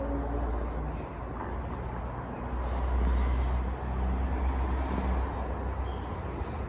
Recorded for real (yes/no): yes